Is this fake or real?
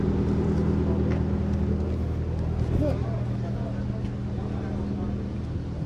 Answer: real